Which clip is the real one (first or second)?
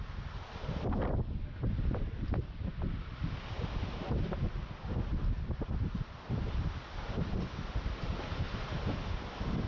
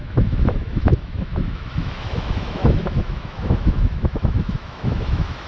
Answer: first